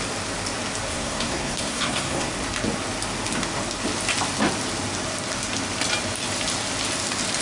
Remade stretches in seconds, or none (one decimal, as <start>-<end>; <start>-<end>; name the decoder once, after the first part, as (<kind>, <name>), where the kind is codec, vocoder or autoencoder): 0.9-2.3 (codec, SNAC)